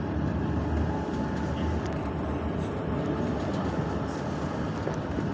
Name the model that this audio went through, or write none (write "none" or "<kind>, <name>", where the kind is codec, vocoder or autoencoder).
none